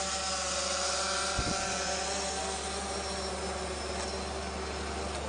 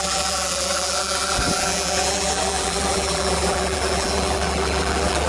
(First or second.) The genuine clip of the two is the first